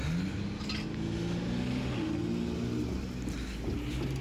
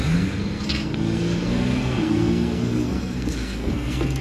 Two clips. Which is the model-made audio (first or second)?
second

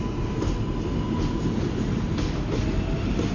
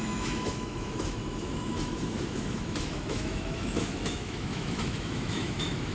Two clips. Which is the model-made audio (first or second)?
second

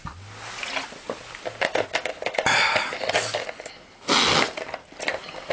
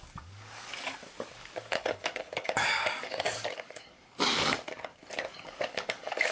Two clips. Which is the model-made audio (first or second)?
second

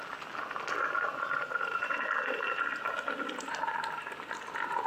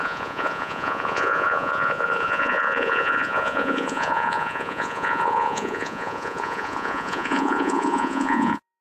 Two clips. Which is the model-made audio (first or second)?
second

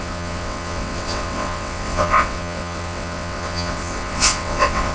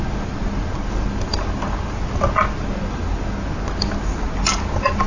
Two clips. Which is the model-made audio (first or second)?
first